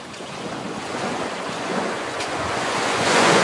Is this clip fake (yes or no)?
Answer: yes